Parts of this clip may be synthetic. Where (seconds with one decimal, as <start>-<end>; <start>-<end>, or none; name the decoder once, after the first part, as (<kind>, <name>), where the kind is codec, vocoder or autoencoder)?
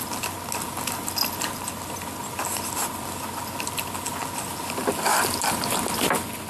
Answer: none